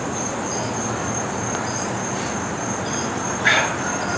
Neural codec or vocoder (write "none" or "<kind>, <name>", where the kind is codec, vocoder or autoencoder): none